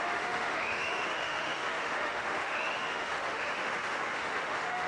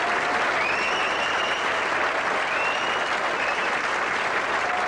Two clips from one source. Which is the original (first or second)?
second